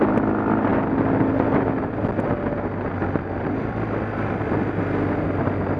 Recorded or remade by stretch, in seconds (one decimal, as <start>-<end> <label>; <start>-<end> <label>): 0.0-5.8 recorded